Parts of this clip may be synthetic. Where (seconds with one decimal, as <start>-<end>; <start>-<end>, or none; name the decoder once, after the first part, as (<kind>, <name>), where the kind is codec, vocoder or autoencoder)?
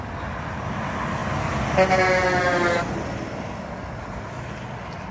none